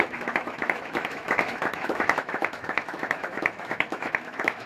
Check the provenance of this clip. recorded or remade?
remade